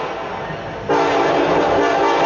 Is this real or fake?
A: real